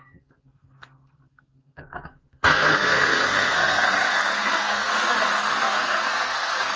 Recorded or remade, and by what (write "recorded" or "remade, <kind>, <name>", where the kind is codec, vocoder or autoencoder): remade, codec, SNAC